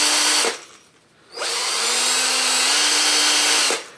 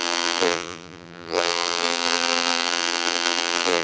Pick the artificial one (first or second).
second